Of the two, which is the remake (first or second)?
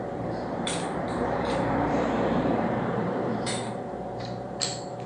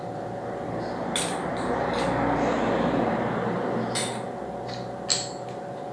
first